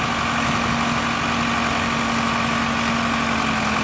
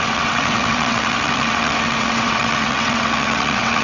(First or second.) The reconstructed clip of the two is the second